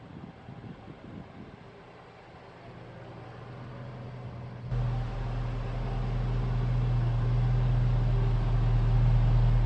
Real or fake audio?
real